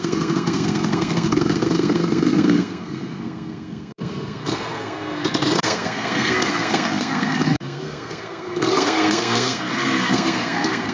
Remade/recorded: remade